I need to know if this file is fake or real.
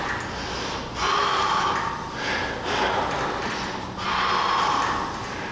real